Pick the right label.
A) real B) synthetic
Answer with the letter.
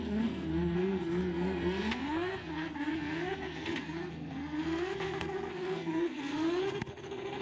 B